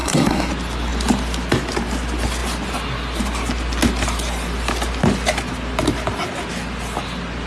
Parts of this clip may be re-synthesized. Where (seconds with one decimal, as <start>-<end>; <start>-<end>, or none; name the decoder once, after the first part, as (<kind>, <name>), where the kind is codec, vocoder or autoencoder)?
0.0-0.5 (codec, SNAC)